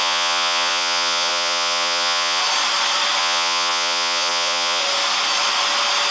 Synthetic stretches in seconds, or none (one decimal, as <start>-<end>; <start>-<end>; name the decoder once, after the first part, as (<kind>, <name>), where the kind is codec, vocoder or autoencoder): 0.0-2.4 (vocoder, Vocos); 3.2-4.8